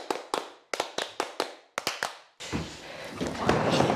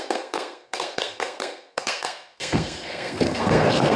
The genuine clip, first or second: first